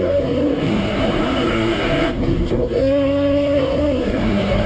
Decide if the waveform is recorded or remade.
remade